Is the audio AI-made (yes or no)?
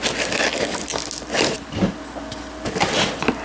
no